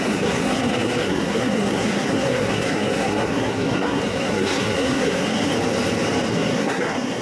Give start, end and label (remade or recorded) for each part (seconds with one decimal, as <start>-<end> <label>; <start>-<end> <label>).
0.0-5.5 remade; 5.5-6.3 recorded; 6.3-7.2 remade